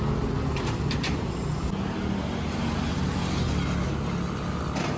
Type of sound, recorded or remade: recorded